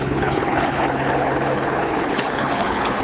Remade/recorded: remade